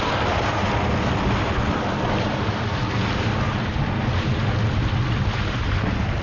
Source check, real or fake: real